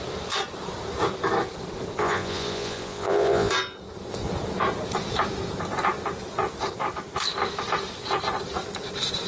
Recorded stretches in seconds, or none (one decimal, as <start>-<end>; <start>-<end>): 0.0-2.0; 3.5-9.3